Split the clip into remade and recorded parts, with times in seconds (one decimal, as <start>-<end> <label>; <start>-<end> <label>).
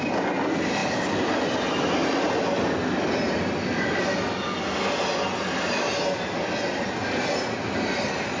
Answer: 0.0-8.4 recorded